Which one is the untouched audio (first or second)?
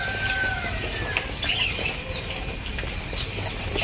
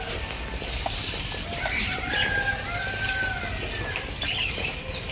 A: first